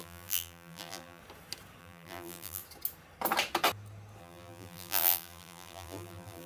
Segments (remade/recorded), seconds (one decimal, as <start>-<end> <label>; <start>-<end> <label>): 0.0-1.2 remade; 1.2-1.8 recorded; 1.8-2.6 remade; 2.6-4.2 recorded; 4.2-6.5 remade